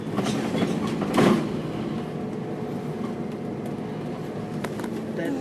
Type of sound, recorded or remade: recorded